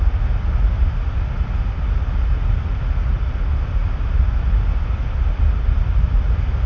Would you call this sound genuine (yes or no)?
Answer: yes